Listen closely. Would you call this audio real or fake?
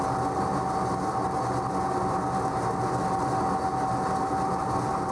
real